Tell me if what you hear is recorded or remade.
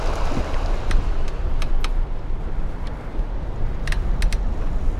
recorded